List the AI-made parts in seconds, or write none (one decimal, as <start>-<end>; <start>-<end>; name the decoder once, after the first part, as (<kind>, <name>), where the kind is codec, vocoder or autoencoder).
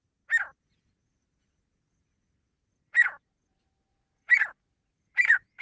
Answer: 0.6-5.6 (vocoder, Vocos)